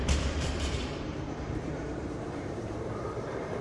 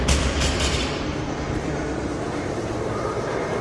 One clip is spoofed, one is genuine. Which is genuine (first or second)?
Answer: second